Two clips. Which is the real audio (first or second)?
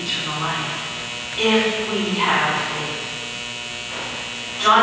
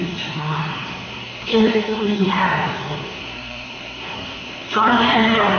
first